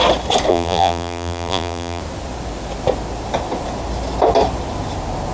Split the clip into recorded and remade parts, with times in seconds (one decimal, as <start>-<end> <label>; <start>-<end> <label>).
0.0-0.5 recorded; 0.5-2.0 remade; 2.0-5.3 recorded